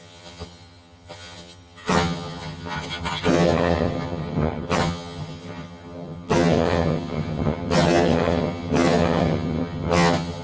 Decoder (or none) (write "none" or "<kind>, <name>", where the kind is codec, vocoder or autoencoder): vocoder, HiFi-GAN